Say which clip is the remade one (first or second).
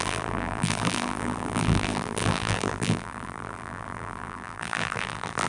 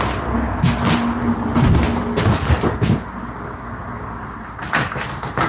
first